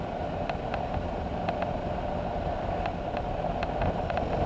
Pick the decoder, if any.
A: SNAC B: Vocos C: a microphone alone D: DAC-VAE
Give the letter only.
C